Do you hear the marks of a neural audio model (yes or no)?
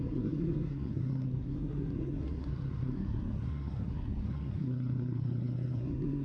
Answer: yes